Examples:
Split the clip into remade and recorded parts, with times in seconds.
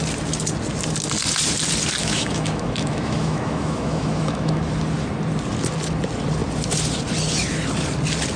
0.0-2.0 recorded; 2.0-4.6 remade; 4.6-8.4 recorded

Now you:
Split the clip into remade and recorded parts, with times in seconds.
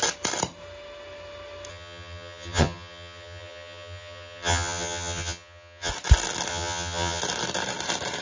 0.0-1.7 recorded; 1.7-5.9 remade; 5.9-6.5 recorded; 6.5-7.2 remade; 7.2-8.2 recorded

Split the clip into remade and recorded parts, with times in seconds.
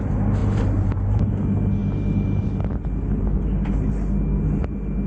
0.0-0.4 recorded; 0.4-1.3 remade; 1.3-5.1 recorded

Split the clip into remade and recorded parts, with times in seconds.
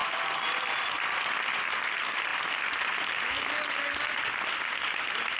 0.0-5.4 recorded